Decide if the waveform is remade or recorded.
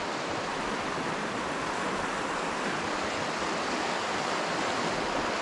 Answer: recorded